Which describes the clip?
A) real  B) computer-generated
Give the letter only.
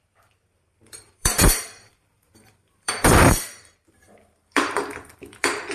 B